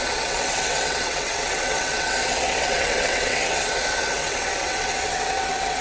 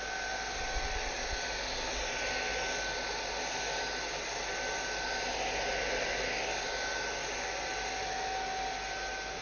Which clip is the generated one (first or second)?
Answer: first